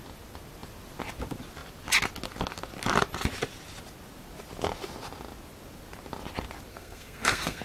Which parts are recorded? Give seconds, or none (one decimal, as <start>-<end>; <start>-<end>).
0.0-6.7